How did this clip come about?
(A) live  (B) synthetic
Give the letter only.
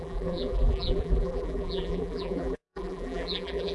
B